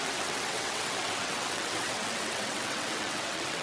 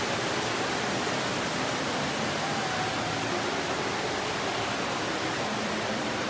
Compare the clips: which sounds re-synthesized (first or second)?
first